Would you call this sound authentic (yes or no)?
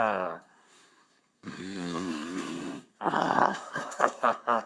no